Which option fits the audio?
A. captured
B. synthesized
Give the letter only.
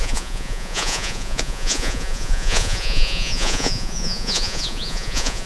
B